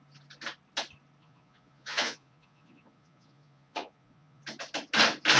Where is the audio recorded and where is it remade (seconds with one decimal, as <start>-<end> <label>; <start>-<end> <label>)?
0.0-1.2 recorded; 1.2-4.4 remade; 4.4-5.4 recorded